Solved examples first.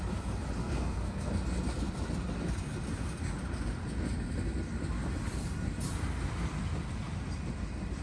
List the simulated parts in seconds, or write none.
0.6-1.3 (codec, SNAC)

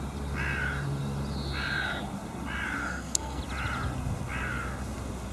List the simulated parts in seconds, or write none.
2.8-3.4 (codec, SNAC)

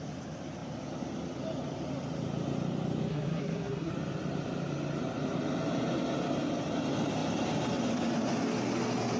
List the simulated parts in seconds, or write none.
3.1-3.9 (codec, SNAC)